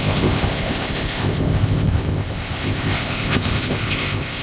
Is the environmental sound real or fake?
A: fake